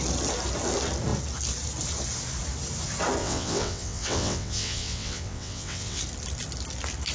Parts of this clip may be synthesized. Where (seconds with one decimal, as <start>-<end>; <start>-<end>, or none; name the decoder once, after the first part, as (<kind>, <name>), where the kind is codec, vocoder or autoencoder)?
3.2-6.0 (vocoder, WaveNeXt)